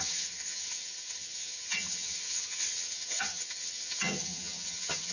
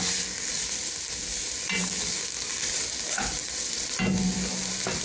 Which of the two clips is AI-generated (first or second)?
first